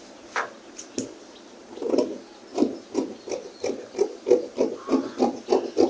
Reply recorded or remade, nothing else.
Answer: recorded